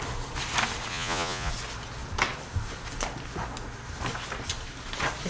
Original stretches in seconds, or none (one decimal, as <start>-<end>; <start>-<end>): 0.0-0.9; 1.5-5.3